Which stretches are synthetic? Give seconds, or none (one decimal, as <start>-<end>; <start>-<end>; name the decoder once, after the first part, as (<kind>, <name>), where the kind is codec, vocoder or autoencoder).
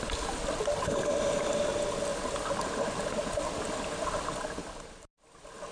none